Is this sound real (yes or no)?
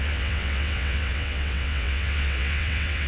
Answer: no